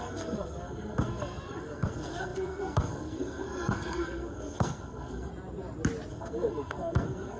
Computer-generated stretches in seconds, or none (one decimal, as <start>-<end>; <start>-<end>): 0.0-5.3; 6.1-7.4